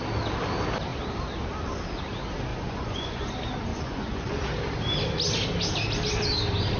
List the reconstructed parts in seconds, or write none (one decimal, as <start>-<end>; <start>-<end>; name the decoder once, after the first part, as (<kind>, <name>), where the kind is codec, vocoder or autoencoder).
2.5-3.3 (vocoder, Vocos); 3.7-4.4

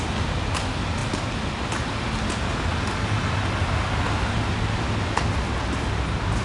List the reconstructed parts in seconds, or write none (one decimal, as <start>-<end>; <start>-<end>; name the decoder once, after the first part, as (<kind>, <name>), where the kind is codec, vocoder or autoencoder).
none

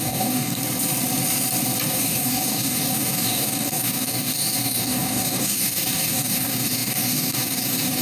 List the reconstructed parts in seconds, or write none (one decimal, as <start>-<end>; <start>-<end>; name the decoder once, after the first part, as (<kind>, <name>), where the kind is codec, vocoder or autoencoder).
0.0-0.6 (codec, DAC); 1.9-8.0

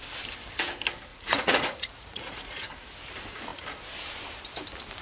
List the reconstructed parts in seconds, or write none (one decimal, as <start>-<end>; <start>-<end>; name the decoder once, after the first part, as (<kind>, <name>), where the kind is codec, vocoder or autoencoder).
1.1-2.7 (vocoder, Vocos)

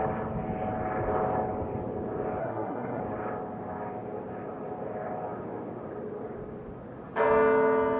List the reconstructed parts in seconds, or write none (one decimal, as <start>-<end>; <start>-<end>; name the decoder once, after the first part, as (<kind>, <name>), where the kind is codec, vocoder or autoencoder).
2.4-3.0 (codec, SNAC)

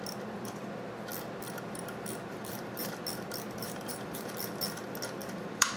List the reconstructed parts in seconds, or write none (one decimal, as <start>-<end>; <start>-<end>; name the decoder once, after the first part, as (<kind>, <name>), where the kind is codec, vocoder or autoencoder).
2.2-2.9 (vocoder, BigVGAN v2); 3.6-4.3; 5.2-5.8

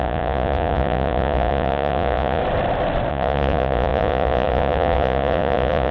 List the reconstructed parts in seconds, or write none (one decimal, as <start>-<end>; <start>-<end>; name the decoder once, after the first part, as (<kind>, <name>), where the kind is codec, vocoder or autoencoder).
0.0-2.4 (vocoder, Vocos); 3.1-5.9